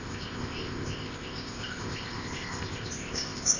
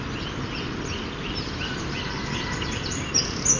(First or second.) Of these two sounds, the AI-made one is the first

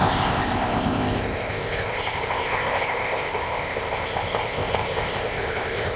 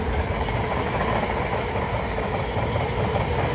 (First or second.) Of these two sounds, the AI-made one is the first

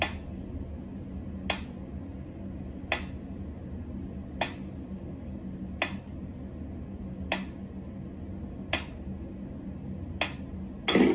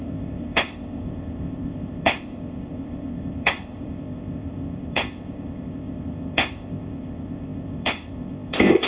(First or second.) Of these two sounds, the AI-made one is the second